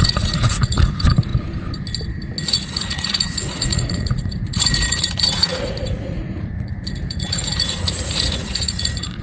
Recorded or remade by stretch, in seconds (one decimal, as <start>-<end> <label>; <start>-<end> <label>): 0.0-1.3 remade; 1.3-2.5 recorded; 2.5-9.2 remade